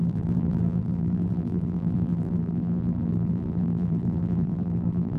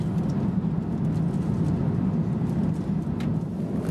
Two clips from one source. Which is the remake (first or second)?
first